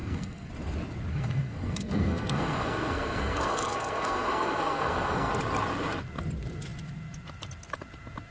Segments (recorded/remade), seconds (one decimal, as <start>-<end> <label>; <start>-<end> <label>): 0.0-0.5 remade; 0.5-1.1 recorded; 1.1-5.3 remade; 5.3-8.3 recorded